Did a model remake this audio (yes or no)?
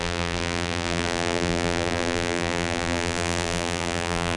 yes